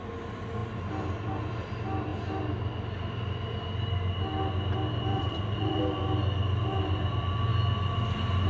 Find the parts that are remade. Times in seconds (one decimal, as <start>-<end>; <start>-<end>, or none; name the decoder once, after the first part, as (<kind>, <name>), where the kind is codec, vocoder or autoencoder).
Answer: 5.1-5.8 (vocoder, Vocos)

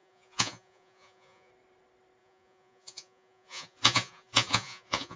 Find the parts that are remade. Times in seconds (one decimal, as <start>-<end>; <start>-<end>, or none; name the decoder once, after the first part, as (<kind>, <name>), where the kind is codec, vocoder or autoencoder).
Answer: 0.0-1.5 (vocoder, Vocos); 2.2-5.2